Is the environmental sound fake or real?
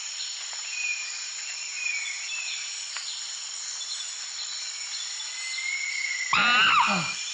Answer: real